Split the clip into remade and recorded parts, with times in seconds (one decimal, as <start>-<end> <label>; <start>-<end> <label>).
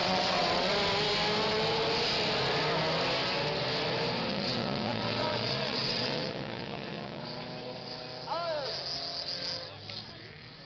0.0-0.7 remade; 0.7-4.3 recorded; 4.3-7.2 remade; 7.2-10.7 recorded